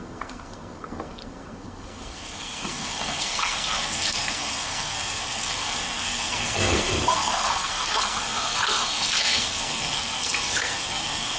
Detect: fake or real fake